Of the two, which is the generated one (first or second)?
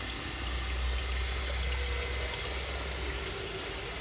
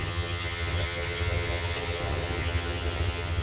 second